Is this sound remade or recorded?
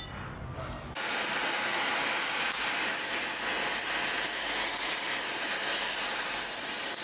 recorded